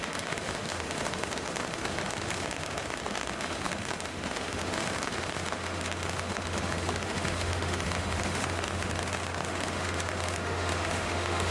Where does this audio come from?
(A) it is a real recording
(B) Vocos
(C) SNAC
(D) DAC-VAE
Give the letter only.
D